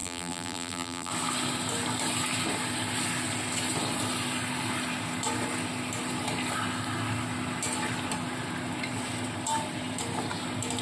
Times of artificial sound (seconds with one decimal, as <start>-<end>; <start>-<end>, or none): 0.0-1.1